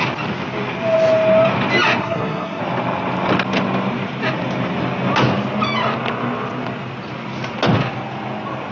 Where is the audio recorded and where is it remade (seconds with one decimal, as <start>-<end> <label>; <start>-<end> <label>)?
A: 0.0-2.0 recorded; 2.0-2.6 remade; 2.6-8.7 recorded